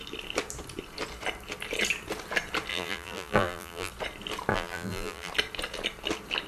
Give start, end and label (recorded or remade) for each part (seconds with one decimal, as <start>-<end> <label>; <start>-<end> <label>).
0.0-2.7 recorded; 2.7-3.9 remade; 3.9-4.5 recorded; 4.5-5.3 remade; 5.3-6.5 recorded

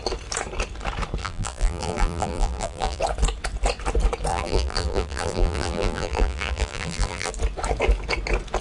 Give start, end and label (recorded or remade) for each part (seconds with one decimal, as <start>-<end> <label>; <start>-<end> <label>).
0.0-1.2 recorded; 1.2-3.0 remade; 3.0-4.3 recorded; 4.3-7.3 remade; 7.3-8.6 recorded

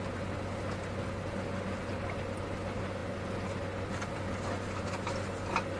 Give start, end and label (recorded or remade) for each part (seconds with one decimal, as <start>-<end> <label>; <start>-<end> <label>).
0.0-5.8 recorded

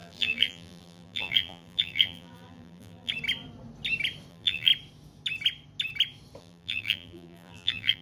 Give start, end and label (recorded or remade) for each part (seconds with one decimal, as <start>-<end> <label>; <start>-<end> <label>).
0.0-3.1 remade; 3.1-4.3 recorded; 4.3-4.7 remade; 4.7-6.4 recorded; 6.4-8.0 remade

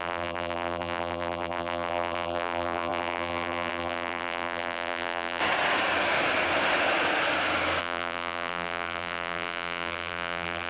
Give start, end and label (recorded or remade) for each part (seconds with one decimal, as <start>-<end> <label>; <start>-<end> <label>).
0.0-5.4 remade; 5.4-7.8 recorded; 7.8-10.7 remade

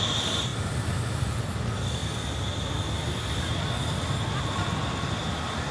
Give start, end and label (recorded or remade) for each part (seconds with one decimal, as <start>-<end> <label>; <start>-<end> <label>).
0.0-0.5 recorded; 0.5-1.4 remade; 1.4-5.7 recorded

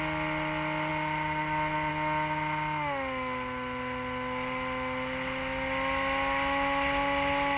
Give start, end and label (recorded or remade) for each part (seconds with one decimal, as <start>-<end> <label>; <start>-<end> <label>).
0.0-7.6 recorded

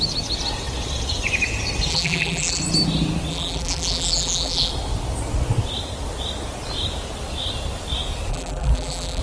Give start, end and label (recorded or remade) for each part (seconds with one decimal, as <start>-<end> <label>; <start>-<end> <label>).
0.0-1.9 recorded; 1.9-2.6 remade; 2.6-3.3 recorded; 3.3-4.7 remade; 4.7-8.3 recorded; 8.3-9.2 remade